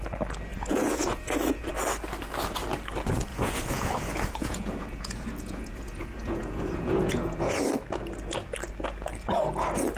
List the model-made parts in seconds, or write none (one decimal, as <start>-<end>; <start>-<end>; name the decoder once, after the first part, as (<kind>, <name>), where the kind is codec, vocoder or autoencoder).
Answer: 0.5-1.7 (vocoder, Vocos); 3.3-7.4